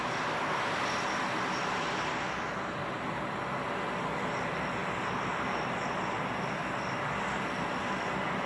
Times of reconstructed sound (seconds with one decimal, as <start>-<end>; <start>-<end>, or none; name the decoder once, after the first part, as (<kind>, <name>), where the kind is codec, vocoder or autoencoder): 2.8-3.7 (vocoder, BigVGAN v2)